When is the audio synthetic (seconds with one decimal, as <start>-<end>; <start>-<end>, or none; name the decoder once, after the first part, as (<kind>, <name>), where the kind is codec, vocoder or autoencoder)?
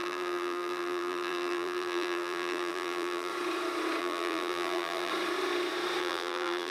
0.0-3.3 (vocoder, BigVGAN v2); 4.0-5.1; 6.0-6.7